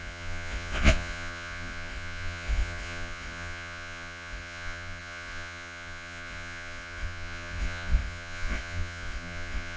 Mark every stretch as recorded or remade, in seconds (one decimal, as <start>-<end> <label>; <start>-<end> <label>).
0.0-9.8 remade